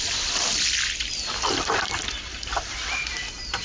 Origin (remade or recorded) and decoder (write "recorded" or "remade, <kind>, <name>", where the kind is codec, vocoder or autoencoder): recorded